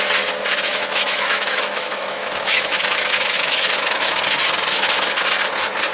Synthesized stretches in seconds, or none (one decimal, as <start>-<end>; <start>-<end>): 0.7-4.2; 4.7-5.2